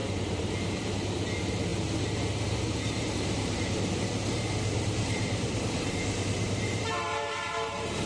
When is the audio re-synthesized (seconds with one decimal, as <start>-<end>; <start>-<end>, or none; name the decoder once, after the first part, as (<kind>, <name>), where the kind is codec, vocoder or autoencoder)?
0.0-8.1 (vocoder, BigVGAN v2)